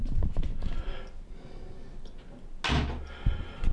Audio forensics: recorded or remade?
recorded